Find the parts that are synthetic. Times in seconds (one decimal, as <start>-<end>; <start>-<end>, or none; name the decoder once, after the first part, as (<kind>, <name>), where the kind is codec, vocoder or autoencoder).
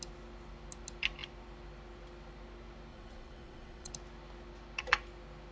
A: 2.9-3.9 (vocoder, WaveNeXt)